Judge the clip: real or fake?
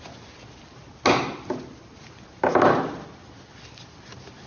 real